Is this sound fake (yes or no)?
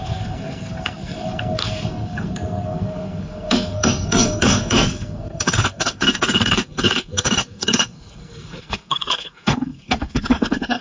yes